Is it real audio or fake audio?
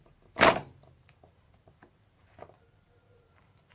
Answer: fake